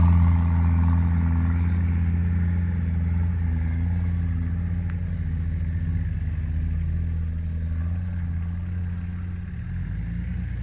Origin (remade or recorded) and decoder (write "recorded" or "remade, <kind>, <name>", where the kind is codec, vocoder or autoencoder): recorded